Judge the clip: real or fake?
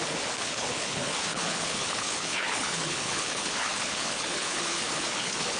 fake